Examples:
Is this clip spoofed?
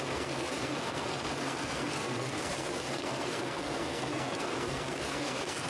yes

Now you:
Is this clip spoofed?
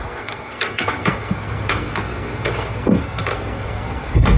yes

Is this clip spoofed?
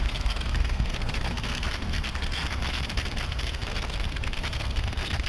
yes